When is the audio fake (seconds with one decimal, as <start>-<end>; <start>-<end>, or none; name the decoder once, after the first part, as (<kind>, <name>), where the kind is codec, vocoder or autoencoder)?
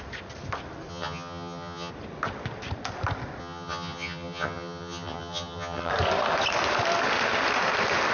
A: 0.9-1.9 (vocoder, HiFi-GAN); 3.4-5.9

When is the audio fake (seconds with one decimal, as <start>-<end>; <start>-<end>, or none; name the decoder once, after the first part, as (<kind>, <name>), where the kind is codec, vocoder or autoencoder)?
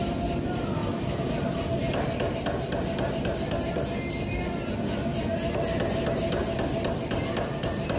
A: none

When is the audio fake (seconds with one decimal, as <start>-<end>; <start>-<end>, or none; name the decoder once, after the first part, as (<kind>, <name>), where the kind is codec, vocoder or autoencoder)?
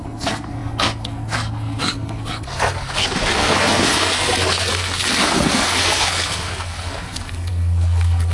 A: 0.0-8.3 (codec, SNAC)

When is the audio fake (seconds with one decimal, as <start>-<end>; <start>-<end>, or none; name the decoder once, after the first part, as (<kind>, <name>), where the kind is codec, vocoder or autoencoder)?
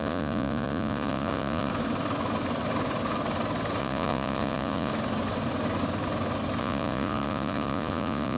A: 0.0-1.7 (vocoder, Vocos); 3.8-4.9; 6.6-8.4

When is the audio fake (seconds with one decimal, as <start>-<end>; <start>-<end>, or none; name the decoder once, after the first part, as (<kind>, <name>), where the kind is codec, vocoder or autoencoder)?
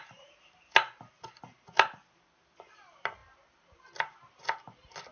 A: none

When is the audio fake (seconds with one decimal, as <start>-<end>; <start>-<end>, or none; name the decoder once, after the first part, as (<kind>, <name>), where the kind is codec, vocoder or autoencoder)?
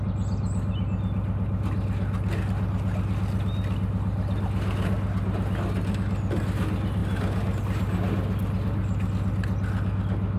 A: none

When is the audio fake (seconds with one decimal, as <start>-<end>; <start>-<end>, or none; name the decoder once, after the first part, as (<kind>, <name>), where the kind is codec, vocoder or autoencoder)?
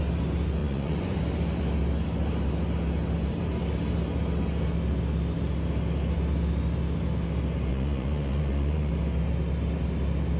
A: 0.6-1.2 (vocoder, Vocos); 7.7-8.9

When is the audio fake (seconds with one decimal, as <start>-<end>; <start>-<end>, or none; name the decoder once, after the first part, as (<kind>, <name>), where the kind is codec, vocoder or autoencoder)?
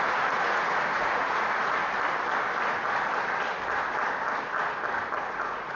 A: 0.0-1.8 (vocoder, Vocos); 5.2-5.8